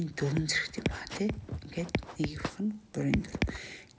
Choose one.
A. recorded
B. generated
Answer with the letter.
A